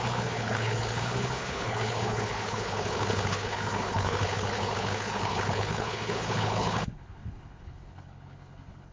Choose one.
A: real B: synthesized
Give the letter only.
B